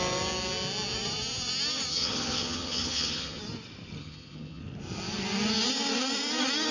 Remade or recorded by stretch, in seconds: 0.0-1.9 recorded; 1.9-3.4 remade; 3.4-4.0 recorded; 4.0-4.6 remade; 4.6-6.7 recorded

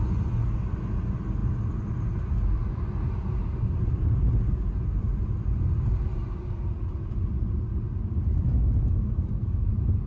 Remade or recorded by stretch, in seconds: 0.0-8.9 recorded; 8.9-9.7 remade; 9.7-10.1 recorded

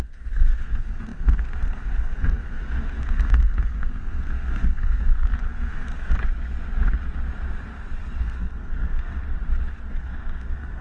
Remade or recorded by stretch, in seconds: 0.0-6.2 remade; 6.2-8.2 recorded; 8.2-9.2 remade; 9.2-9.9 recorded; 9.9-10.8 remade

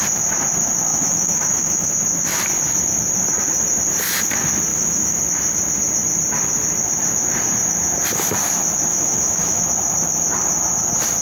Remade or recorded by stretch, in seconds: 0.0-0.9 recorded; 0.9-1.9 remade; 1.9-4.7 recorded; 4.7-5.2 remade; 5.2-8.9 recorded; 8.9-9.6 remade; 9.6-11.2 recorded

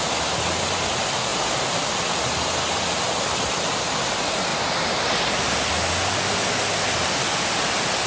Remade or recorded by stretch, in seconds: 0.0-8.1 recorded